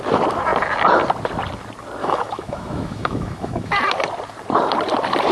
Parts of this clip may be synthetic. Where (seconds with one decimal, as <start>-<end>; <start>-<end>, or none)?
2.0-3.7